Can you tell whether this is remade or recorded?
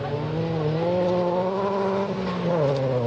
recorded